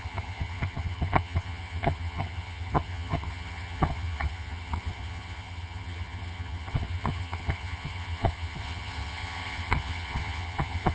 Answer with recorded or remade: remade